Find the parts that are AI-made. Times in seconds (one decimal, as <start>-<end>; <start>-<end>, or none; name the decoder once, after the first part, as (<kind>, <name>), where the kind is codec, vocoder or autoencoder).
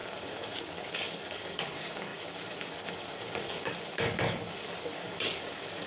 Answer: 0.0-5.9 (codec, DAC)